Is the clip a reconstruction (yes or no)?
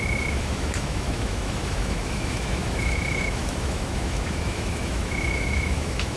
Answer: yes